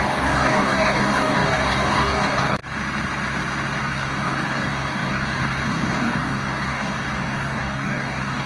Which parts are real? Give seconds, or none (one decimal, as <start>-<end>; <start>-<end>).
2.6-3.8